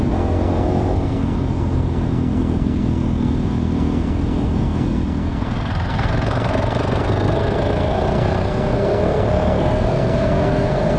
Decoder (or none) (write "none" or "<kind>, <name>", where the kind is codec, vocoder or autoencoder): codec, SNAC